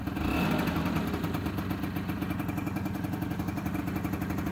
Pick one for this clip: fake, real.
real